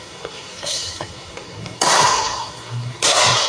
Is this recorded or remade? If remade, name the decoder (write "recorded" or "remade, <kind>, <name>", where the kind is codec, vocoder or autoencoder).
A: remade, codec, SNAC